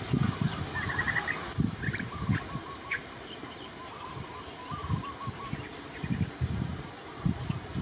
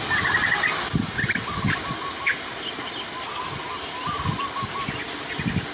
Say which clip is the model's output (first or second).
first